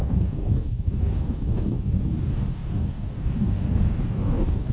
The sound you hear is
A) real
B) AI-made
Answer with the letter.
B